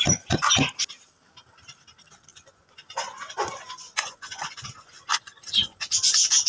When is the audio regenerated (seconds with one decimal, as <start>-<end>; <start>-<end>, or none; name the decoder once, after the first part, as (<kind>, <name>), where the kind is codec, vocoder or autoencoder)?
2.3-6.5 (vocoder, Vocos)